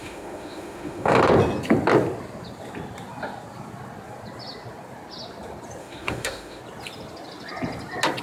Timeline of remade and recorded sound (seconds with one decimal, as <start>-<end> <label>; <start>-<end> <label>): 0.0-1.2 remade; 1.2-5.8 recorded; 5.8-6.6 remade; 6.6-8.2 recorded